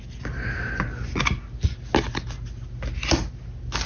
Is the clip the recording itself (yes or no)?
yes